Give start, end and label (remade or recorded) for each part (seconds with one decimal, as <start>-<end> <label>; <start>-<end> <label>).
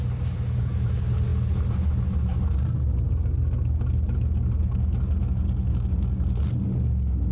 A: 0.0-7.3 recorded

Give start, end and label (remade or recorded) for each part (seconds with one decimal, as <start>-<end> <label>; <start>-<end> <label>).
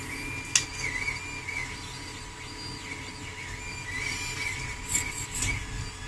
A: 0.0-6.1 recorded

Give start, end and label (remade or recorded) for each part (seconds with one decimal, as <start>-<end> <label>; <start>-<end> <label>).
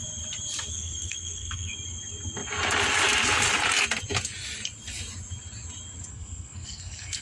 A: 0.0-0.7 recorded; 0.7-1.7 remade; 1.7-6.1 recorded; 6.1-7.2 remade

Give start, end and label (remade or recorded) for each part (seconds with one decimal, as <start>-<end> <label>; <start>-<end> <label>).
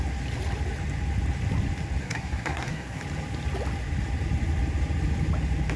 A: 0.0-2.0 recorded; 2.0-3.0 remade; 3.0-5.8 recorded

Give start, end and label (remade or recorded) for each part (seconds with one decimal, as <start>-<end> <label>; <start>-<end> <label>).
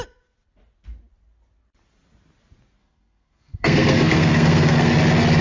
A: 0.0-2.8 recorded; 2.8-4.9 remade; 4.9-5.4 recorded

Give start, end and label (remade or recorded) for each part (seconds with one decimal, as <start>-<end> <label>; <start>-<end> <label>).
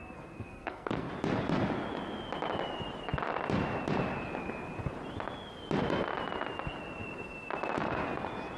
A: 0.0-1.1 remade; 1.1-8.6 recorded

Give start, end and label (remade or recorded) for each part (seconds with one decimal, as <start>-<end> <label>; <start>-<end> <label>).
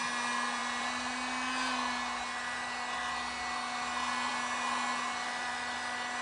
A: 0.0-6.2 recorded